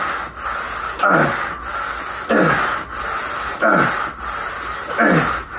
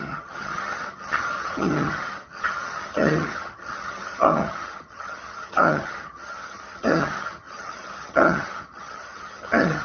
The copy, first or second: second